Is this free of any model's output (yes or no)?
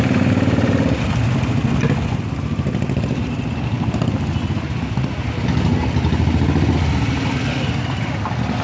yes